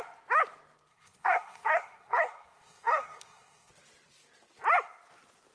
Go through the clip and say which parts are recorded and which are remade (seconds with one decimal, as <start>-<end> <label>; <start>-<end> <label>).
0.0-0.9 recorded; 0.9-3.7 remade; 3.7-5.5 recorded